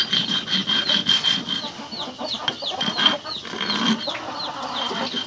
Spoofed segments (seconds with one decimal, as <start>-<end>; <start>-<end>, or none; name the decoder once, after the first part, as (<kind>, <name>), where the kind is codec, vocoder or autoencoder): none